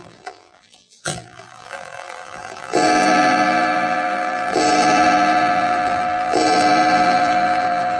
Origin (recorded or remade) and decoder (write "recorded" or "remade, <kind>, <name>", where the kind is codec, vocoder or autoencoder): remade, vocoder, BigVGAN v2